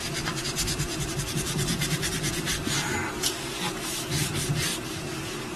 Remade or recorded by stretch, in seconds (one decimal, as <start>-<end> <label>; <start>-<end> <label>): 0.0-0.9 recorded; 0.9-4.3 remade; 4.3-5.6 recorded